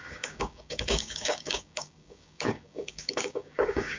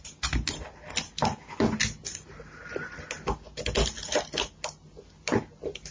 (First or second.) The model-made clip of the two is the first